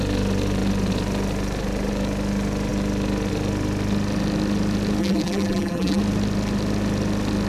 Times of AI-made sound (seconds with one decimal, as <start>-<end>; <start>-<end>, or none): 5.0-6.0